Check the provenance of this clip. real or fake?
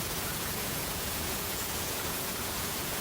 fake